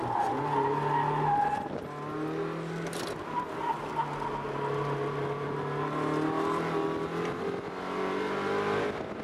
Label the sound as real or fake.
real